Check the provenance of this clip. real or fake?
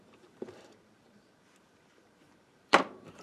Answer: fake